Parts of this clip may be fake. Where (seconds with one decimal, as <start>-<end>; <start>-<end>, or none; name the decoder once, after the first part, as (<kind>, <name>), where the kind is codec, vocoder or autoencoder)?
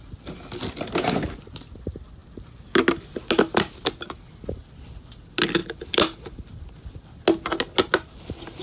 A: none